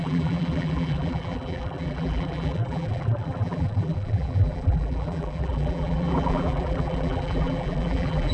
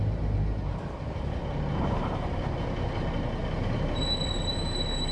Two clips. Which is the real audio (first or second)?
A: second